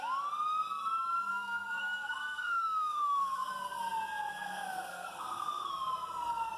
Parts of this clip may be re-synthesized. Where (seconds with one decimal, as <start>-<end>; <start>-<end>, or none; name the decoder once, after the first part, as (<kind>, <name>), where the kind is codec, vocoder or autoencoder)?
1.3-3.5 (codec, SNAC); 4.3-5.7